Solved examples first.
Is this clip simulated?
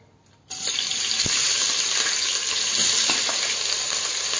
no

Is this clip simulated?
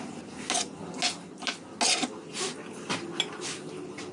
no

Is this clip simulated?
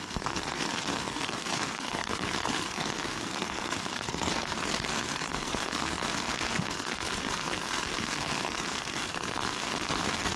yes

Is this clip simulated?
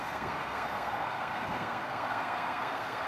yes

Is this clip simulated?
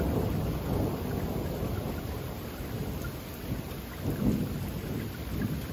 no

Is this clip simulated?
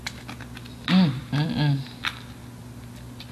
no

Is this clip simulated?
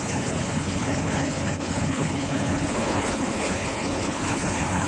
yes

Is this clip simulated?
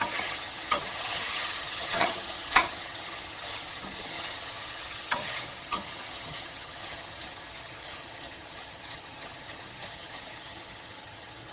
yes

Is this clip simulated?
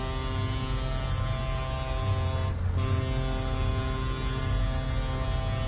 no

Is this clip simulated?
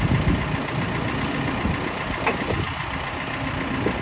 no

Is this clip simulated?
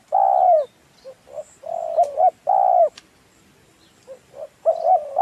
yes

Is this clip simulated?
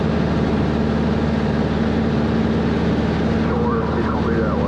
no